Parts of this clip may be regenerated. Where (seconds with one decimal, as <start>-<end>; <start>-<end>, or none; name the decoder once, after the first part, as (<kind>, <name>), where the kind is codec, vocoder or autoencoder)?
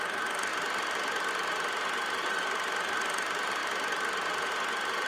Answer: 0.5-1.3 (vocoder, BigVGAN v2); 3.6-4.5